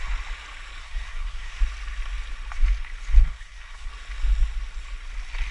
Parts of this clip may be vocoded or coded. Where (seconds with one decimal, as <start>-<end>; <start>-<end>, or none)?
0.8-1.6; 3.2-3.9